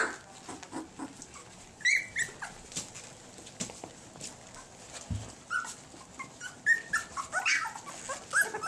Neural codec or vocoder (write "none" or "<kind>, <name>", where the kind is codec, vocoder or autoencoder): none